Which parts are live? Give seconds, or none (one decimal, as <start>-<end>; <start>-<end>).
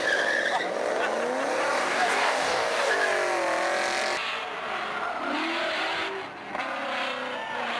0.0-1.8; 2.9-7.8